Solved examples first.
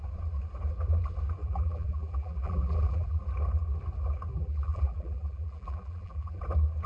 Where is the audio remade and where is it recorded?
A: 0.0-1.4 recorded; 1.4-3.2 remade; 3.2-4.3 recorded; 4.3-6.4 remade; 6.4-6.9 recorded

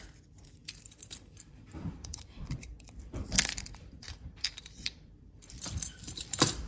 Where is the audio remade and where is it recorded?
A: 0.0-6.7 remade

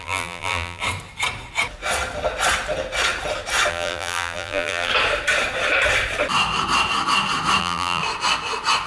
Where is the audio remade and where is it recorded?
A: 0.0-0.8 remade; 0.8-3.7 recorded; 3.7-4.9 remade; 4.9-7.6 recorded; 7.6-8.0 remade; 8.0-8.9 recorded

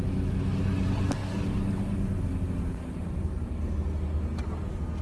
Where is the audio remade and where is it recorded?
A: 0.0-5.0 recorded

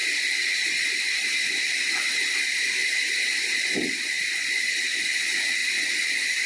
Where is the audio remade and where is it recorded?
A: 0.0-6.5 recorded

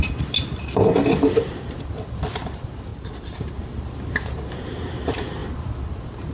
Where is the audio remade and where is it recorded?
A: 0.0-2.9 recorded; 2.9-3.4 remade; 3.4-6.3 recorded